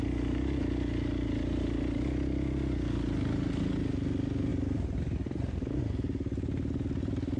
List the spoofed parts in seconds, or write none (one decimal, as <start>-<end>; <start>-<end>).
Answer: 4.5-5.8